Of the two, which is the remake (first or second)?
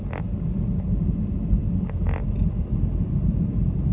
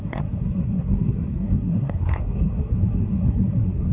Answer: second